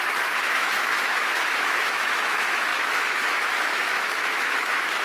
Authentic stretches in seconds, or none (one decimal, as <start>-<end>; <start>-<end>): none